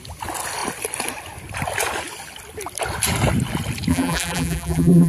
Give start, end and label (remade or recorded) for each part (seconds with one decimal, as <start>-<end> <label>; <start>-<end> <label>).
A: 0.0-3.9 recorded; 3.9-5.1 remade